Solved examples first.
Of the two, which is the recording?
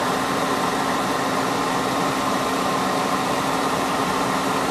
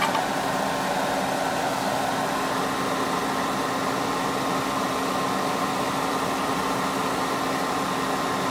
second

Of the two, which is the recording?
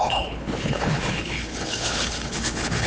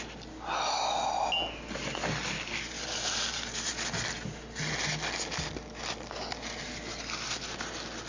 second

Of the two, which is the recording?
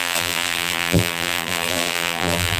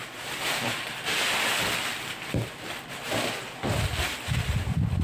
second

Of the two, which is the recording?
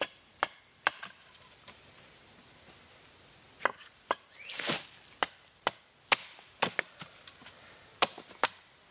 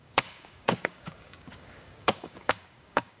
first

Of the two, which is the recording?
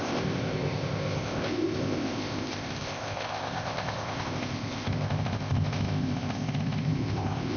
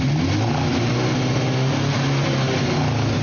second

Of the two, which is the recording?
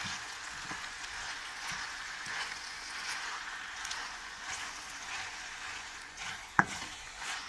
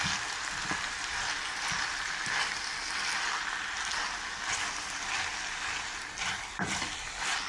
second